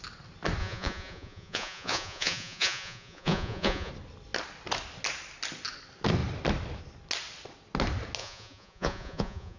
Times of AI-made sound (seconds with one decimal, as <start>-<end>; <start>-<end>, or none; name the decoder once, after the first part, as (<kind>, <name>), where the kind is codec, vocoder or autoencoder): 0.6-3.9 (vocoder, Vocos); 8.2-9.6